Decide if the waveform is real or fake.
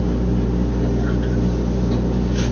real